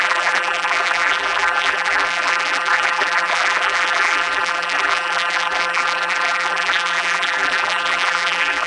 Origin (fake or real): fake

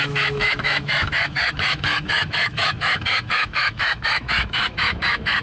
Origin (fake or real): fake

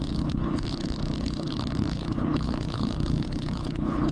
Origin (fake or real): fake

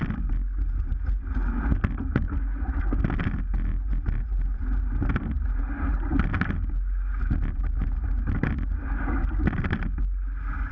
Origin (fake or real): real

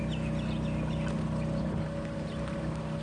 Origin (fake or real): fake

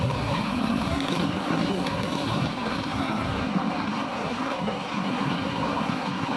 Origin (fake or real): fake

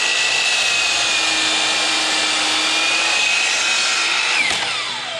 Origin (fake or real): real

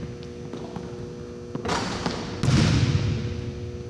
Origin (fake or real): real